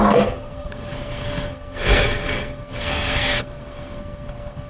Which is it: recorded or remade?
remade